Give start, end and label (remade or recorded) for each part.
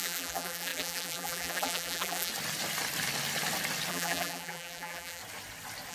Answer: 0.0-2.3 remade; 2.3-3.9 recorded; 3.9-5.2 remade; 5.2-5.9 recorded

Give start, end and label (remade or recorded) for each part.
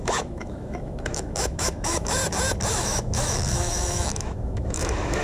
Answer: 0.0-2.2 remade; 2.2-2.7 recorded; 2.7-5.2 remade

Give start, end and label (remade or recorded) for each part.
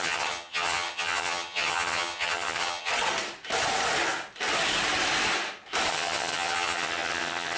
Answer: 0.0-2.9 remade; 2.9-5.9 recorded; 5.9-7.6 remade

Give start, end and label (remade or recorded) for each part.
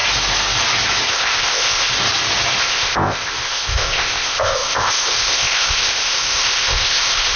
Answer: 0.0-1.1 recorded; 1.1-1.9 remade; 1.9-2.6 recorded; 2.6-7.4 remade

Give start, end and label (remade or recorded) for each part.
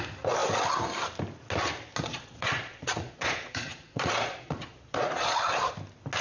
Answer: 0.0-2.1 recorded; 2.1-5.7 remade; 5.7-6.2 recorded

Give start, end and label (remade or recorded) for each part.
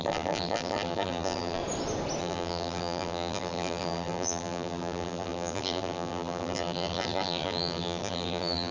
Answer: 0.0-1.6 remade; 1.6-2.2 recorded; 2.2-8.7 remade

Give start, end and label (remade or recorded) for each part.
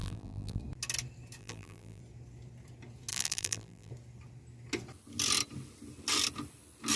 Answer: 0.0-0.6 remade; 0.6-1.4 recorded; 1.4-2.0 remade; 2.0-3.1 recorded; 3.1-3.9 remade; 3.9-7.0 recorded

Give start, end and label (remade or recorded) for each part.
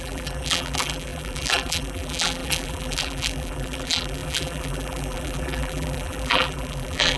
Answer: 0.0-7.2 remade